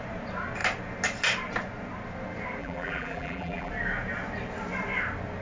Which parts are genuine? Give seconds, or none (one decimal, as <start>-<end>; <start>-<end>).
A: 0.0-2.6; 3.7-5.4